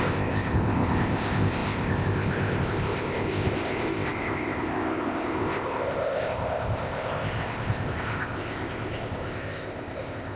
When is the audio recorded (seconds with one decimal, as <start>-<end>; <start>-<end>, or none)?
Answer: none